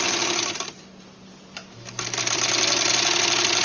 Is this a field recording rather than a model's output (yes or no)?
yes